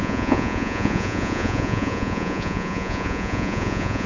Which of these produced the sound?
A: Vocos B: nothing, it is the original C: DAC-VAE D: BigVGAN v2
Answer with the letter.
A